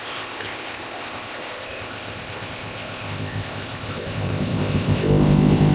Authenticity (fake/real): fake